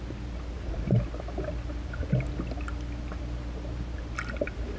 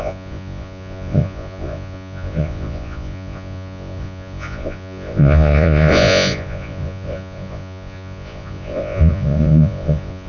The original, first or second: first